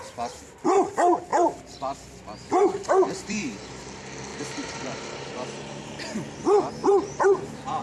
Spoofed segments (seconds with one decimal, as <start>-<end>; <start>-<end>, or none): 1.3-2.1; 2.6-3.8; 4.3-5.8; 6.8-7.8